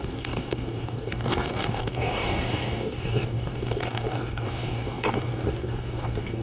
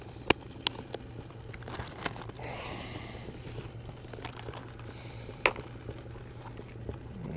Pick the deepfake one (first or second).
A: first